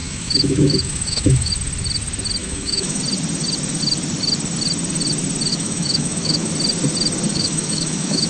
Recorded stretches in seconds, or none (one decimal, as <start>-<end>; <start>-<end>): 1.5-2.4; 3.0-5.5; 6.5-7.3